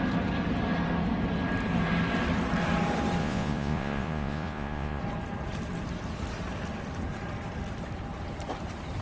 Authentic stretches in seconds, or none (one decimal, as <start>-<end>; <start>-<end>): 0.0-3.2; 5.0-9.0